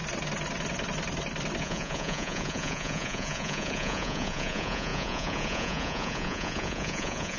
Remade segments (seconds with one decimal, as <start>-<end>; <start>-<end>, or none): 1.6-7.4